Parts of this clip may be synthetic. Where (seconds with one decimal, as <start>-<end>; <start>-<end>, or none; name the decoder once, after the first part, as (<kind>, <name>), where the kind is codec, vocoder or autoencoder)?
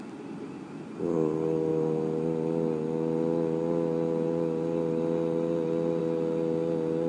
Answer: none